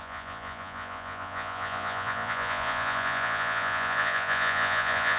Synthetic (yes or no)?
yes